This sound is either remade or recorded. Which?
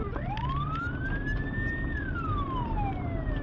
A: recorded